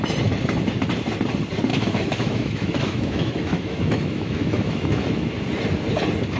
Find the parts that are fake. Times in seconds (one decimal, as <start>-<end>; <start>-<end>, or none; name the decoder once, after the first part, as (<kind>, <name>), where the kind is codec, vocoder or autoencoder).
1.7-5.3 (autoencoder, DAC-VAE)